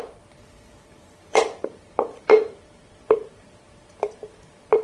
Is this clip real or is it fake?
fake